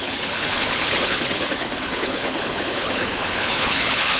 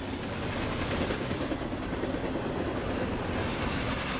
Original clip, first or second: second